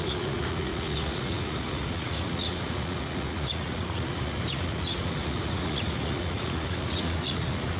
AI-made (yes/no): yes